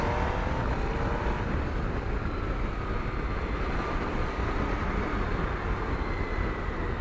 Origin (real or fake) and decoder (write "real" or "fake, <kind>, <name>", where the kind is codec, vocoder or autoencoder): real